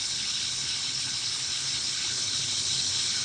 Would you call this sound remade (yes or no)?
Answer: yes